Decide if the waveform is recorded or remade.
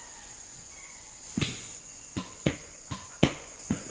remade